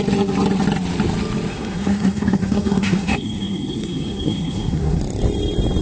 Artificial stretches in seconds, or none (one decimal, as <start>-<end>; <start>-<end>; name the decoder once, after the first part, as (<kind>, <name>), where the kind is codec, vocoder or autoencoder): 1.5-5.0 (codec, SNAC)